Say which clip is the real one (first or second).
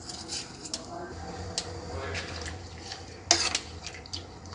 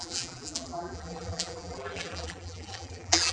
first